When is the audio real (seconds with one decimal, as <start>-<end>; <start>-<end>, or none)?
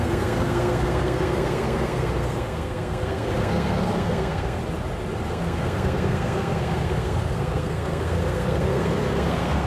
4.6-5.3